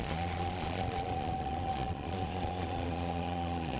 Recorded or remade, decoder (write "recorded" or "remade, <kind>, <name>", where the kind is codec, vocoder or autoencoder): remade, vocoder, Vocos